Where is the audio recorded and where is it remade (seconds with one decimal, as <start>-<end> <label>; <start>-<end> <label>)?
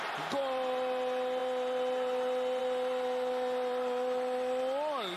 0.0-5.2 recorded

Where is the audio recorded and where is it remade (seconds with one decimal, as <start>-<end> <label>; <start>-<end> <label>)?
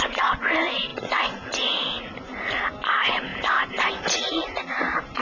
0.0-3.3 recorded; 3.3-3.9 remade; 3.9-5.2 recorded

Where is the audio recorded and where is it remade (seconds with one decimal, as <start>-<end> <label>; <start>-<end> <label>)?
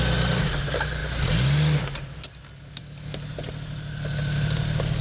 0.0-5.0 recorded